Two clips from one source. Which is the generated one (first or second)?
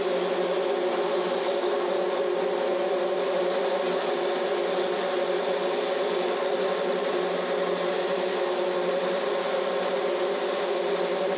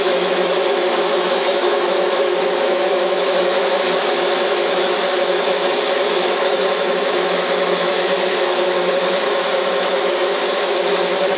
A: second